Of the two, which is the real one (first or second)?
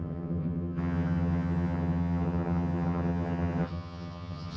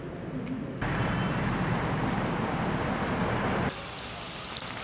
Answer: second